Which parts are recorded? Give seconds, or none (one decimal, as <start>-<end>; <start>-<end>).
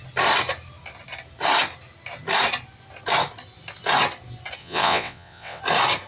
0.0-4.6; 5.6-6.1